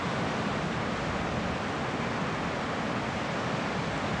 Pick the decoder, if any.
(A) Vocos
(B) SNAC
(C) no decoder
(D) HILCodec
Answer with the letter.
C